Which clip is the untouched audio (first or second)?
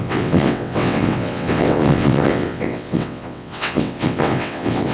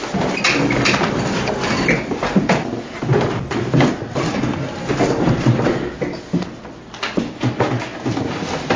second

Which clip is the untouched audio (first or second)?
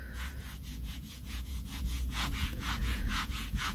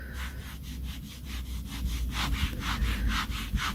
second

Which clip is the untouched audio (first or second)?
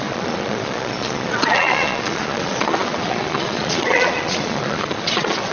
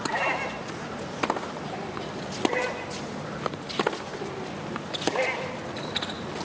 second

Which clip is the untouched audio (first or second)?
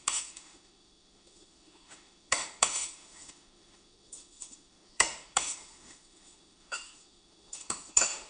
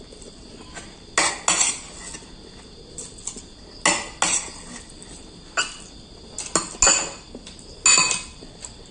second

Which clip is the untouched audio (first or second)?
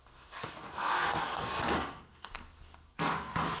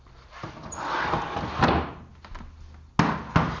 second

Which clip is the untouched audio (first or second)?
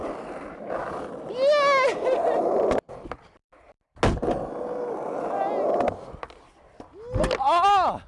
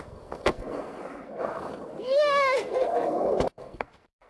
first